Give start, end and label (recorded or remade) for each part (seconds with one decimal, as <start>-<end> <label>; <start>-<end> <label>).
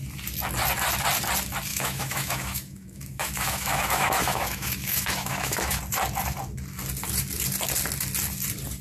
0.0-1.7 recorded; 1.7-5.8 remade; 5.8-8.8 recorded